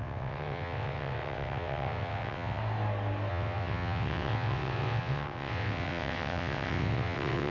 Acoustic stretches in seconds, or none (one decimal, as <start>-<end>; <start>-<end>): 2.6-3.3